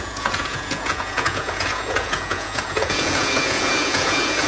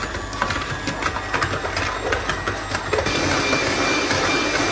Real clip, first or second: second